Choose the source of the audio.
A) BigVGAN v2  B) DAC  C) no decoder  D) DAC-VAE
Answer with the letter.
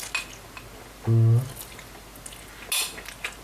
C